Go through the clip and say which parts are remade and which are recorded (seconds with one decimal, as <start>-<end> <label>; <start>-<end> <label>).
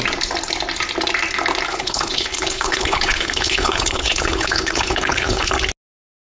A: 0.0-1.7 recorded; 1.7-5.5 remade; 5.5-6.3 recorded